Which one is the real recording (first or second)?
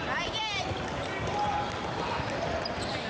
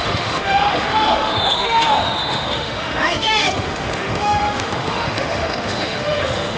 first